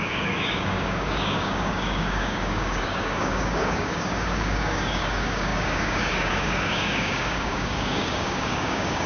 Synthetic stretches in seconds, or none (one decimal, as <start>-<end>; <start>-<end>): 0.0-9.1